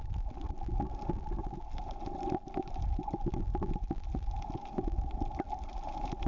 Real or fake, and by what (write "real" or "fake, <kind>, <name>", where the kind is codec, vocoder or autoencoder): real